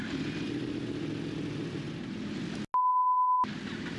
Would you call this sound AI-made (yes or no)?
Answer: no